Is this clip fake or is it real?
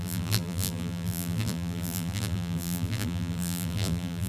fake